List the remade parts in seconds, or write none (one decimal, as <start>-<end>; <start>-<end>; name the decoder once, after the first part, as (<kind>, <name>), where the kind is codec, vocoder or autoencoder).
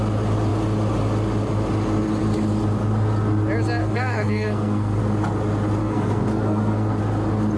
3.8-5.0 (codec, SNAC); 5.8-7.0